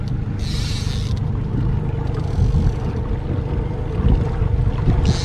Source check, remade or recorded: recorded